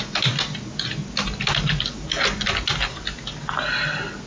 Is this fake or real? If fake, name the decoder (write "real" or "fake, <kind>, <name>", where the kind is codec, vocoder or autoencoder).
real